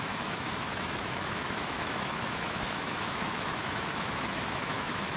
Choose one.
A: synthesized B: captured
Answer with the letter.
A